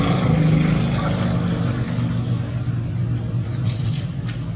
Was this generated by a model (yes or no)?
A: no